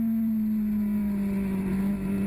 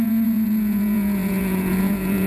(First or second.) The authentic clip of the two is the first